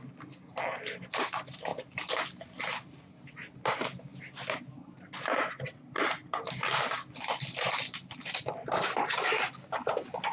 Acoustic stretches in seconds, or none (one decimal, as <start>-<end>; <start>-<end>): 0.0-10.3